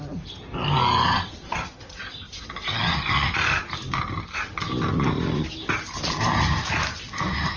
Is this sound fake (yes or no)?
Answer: no